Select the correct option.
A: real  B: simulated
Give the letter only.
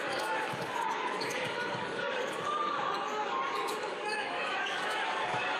B